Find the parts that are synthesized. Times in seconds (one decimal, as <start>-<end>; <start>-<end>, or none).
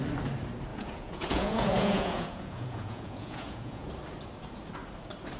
0.7-3.9